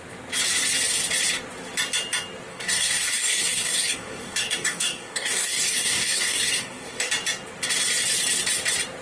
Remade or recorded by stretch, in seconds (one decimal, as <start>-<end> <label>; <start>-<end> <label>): 0.0-2.5 recorded; 2.5-7.1 remade; 7.1-9.0 recorded